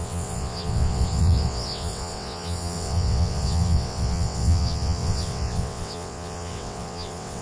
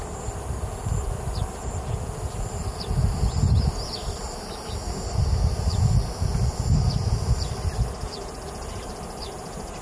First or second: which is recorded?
second